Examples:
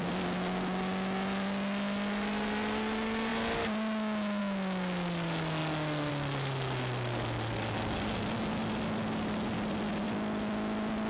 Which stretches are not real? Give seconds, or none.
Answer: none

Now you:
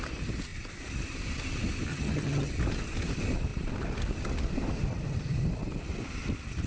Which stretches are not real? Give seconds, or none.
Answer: 1.9-2.5 (vocoder, HiFi-GAN)

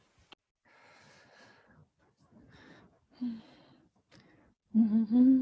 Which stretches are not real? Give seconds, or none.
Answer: none

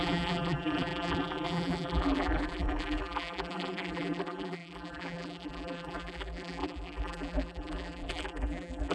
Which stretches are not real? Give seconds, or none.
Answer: 0.0-8.9 (vocoder, BigVGAN v2)